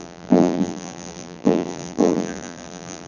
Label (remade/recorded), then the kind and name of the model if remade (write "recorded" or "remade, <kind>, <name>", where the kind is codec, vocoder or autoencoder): remade, vocoder, BigVGAN v2